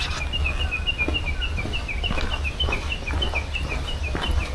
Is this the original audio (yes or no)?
yes